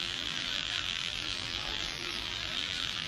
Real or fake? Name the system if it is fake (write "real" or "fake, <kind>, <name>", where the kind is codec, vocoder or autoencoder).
fake, vocoder, BigVGAN v2